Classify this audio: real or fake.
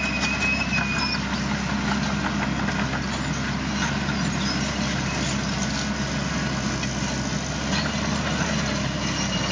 real